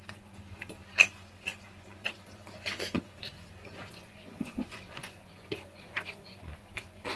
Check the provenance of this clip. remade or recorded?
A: remade